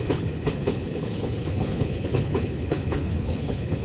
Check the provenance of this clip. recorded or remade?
remade